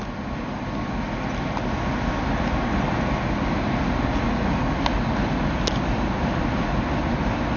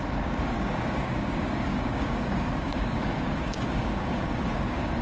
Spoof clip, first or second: second